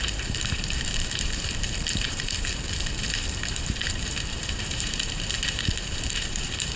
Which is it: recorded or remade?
remade